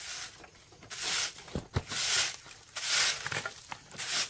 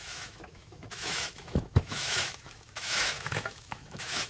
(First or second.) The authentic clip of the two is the first